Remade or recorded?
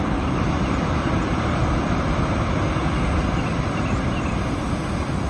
recorded